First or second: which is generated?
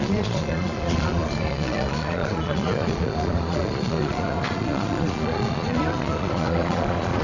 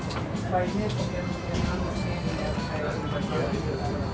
first